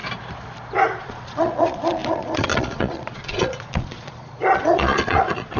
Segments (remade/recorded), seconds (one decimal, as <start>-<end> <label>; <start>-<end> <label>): 0.0-1.0 recorded; 1.0-5.6 remade